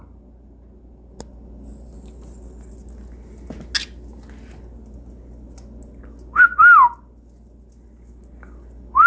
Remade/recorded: recorded